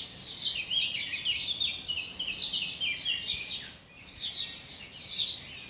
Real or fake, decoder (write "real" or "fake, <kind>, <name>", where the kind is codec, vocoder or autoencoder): real